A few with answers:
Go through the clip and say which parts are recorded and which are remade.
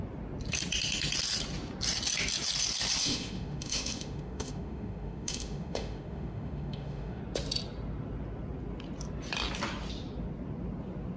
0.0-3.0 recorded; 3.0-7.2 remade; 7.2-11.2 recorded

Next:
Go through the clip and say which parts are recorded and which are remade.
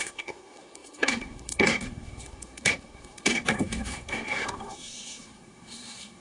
0.0-6.2 remade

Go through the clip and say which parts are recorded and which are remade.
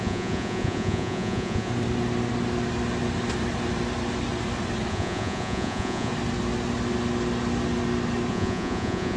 0.0-1.7 remade; 1.7-4.9 recorded; 4.9-6.1 remade; 6.1-8.3 recorded; 8.3-9.2 remade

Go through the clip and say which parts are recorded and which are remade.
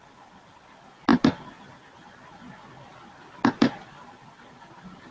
0.0-5.1 recorded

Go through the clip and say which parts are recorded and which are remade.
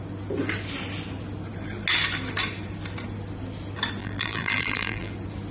0.0-4.0 recorded; 4.0-5.1 remade; 5.1-5.5 recorded